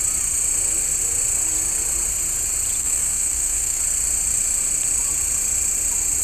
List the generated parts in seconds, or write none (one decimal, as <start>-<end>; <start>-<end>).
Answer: 2.8-3.8